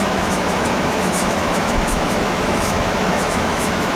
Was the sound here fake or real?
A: fake